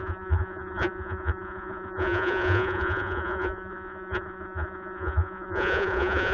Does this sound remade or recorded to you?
remade